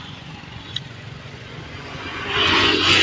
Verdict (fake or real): fake